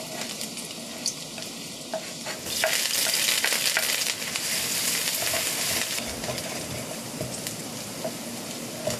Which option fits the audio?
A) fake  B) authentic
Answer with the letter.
A